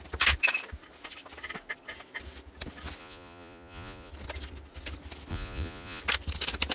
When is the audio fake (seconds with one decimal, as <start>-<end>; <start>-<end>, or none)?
3.0-4.1; 5.3-6.0